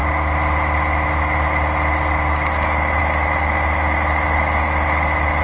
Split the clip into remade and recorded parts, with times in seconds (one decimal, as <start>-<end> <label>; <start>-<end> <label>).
0.0-5.4 recorded